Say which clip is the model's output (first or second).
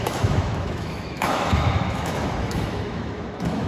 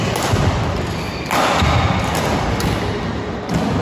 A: first